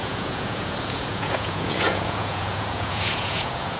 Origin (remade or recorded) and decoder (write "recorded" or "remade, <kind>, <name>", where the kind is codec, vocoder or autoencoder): remade, vocoder, Vocos